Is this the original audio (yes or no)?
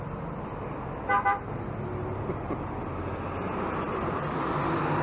yes